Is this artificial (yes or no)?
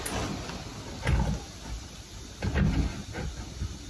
no